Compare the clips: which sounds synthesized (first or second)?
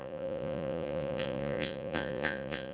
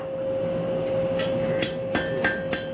first